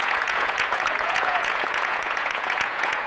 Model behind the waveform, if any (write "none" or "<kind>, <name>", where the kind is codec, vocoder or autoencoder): vocoder, Vocos